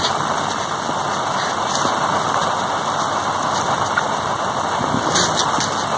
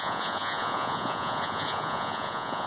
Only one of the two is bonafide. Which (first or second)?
first